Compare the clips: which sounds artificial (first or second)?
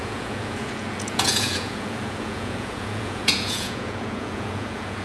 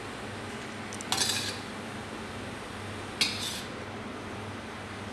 first